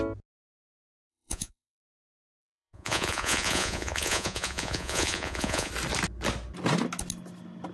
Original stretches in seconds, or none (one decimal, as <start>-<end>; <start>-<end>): 0.0-1.1; 5.7-7.7